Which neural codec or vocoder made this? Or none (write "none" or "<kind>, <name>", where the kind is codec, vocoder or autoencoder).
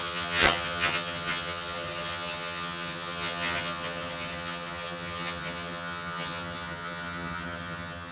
vocoder, HiFi-GAN